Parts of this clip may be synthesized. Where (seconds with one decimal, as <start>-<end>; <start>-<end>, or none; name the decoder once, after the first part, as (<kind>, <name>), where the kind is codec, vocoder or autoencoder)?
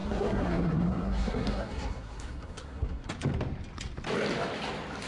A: 0.0-3.1 (codec, SNAC)